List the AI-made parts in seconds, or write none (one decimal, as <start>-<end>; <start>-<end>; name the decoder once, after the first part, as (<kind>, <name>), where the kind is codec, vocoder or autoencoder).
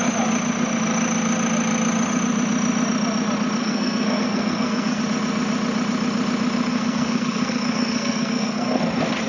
3.6-5.0 (codec, SNAC); 6.7-8.8